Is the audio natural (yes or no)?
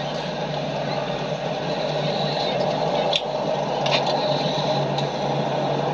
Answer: yes